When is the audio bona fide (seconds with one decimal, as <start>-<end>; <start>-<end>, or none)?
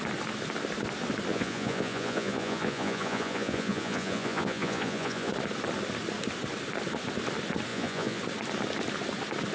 0.0-1.3; 5.3-7.7; 8.2-9.5